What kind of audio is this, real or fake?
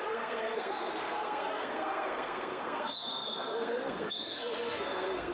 fake